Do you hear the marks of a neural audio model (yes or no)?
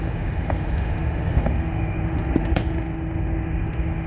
yes